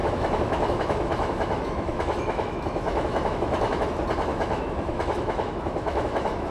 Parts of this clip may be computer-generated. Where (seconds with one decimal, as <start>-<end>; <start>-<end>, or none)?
0.0-3.9; 4.3-6.5